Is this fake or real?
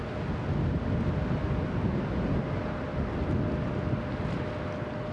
real